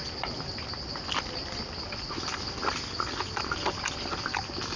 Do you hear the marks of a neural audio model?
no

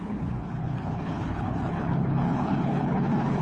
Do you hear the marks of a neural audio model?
yes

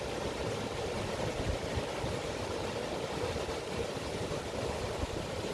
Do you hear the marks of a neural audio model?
no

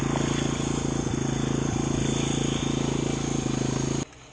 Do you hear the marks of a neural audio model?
no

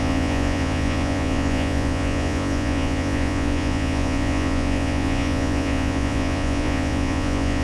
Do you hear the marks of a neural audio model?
yes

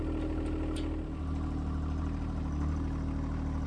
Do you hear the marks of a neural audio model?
no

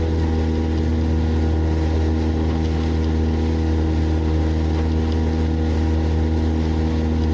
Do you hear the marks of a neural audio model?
no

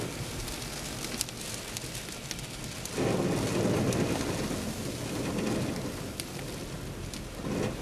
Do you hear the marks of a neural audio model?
no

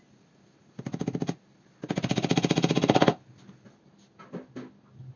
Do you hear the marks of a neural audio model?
no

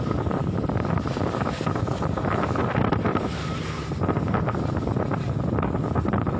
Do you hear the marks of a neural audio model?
no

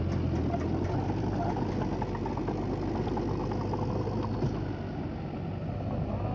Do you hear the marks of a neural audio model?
no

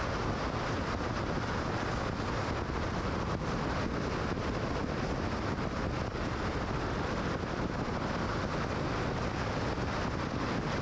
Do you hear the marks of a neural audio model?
no